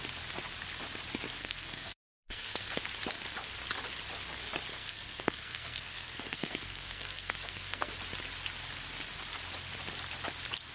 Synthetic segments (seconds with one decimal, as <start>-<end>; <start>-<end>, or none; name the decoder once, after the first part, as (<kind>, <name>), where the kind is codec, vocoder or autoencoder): 1.4-2.8 (codec, SNAC); 4.7-7.9

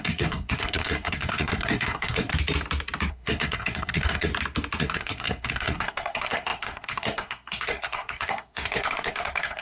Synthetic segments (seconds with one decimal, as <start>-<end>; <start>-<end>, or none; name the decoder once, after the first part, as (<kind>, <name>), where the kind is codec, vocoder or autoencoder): 0.0-2.3 (codec, SNAC); 3.1-4.3; 4.8-9.6

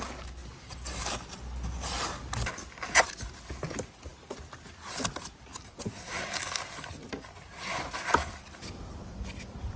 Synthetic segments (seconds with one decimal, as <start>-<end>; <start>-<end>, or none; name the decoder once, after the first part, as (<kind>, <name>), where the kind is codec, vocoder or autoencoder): none

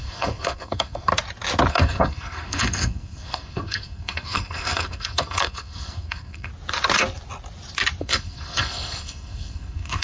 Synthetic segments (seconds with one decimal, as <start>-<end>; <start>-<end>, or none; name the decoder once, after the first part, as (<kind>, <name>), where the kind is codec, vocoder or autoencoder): 0.0-1.1 (codec, SNAC); 1.7-6.5; 8.0-10.0

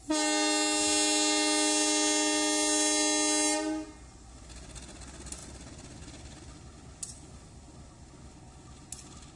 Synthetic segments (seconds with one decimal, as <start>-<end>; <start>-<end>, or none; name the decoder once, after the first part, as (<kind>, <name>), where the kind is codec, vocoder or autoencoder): none

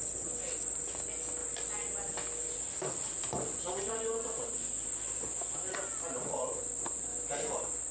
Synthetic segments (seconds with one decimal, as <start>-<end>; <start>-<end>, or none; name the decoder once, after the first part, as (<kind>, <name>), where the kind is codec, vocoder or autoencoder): none

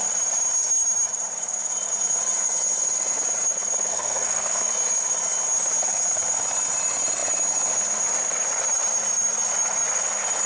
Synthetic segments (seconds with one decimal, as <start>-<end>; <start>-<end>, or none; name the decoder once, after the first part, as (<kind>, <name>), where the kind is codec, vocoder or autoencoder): 3.9-4.7 (codec, SNAC)